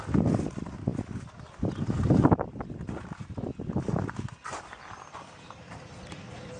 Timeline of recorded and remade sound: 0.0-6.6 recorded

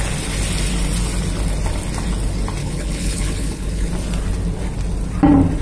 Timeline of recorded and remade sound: 0.0-2.6 recorded; 2.6-3.9 remade; 3.9-5.6 recorded